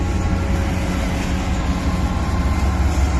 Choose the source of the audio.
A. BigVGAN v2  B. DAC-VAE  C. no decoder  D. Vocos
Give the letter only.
C